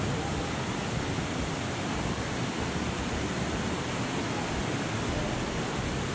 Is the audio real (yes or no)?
yes